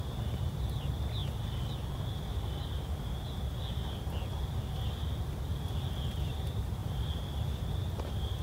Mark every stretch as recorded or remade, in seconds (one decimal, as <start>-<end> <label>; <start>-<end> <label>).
0.0-8.4 recorded